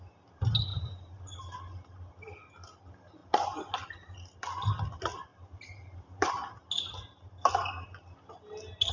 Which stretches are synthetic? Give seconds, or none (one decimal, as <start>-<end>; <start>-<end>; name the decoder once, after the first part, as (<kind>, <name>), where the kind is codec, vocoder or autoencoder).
0.7-1.2 (vocoder, BigVGAN v2); 5.3-6.3